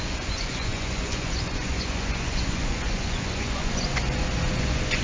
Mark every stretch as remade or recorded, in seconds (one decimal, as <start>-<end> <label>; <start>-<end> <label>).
0.0-5.0 remade